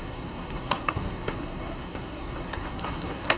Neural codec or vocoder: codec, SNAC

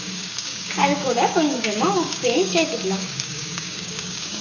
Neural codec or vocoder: codec, DAC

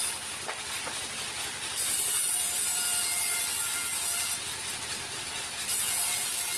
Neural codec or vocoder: vocoder, BigVGAN v2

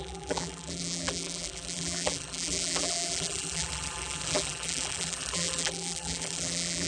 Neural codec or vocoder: vocoder, BigVGAN v2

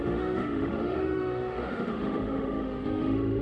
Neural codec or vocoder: autoencoder, DAC-VAE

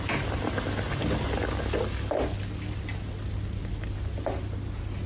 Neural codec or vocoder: none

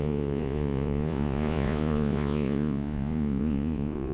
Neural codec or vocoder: vocoder, Vocos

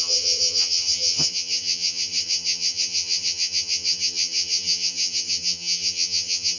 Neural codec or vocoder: vocoder, HiFi-GAN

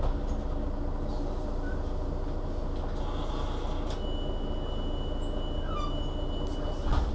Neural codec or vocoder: none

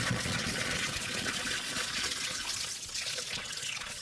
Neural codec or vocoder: vocoder, Vocos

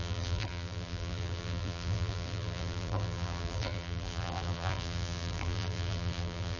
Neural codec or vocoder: vocoder, BigVGAN v2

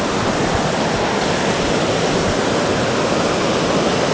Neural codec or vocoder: none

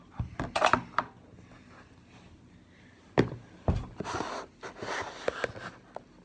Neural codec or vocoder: none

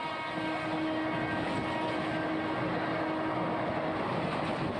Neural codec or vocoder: none